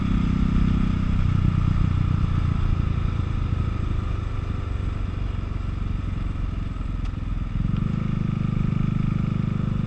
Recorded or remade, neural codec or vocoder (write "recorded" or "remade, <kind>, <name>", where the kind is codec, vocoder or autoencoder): recorded